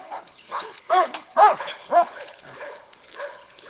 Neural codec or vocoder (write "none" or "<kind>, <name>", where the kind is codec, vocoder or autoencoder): codec, HILCodec